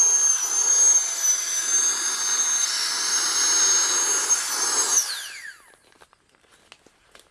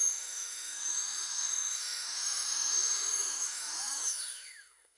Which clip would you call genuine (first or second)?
first